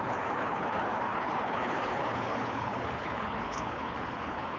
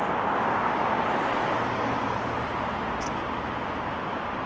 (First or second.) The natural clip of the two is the second